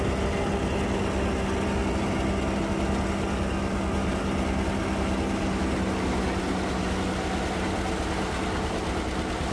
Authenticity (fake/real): real